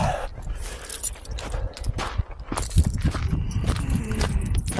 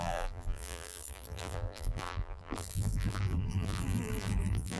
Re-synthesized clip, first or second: second